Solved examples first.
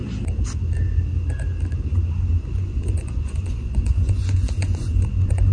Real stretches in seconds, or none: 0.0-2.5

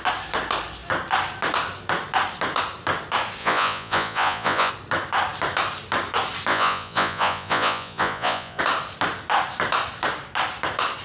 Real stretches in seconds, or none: 0.0-3.4; 4.7-6.5; 8.6-11.0

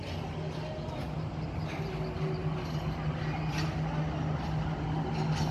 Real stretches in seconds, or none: 0.0-5.5

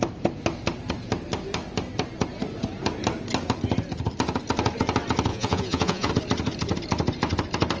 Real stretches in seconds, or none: 0.0-5.3; 6.1-7.8

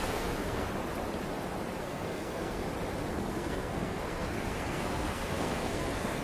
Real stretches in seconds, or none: 0.7-1.8; 2.6-3.1

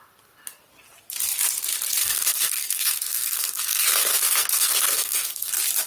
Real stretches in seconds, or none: 0.0-2.0; 5.5-5.9

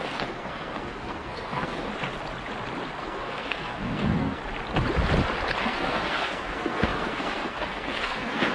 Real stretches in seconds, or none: 1.9-3.0; 4.4-5.6

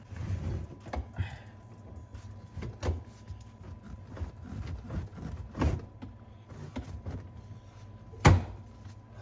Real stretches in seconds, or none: 0.0-9.2